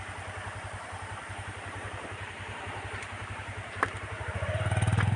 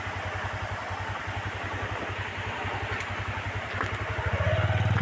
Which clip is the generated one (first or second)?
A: first